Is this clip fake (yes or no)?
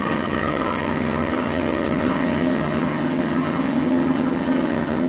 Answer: yes